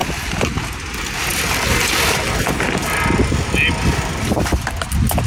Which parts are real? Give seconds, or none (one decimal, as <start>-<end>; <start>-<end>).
0.0-5.3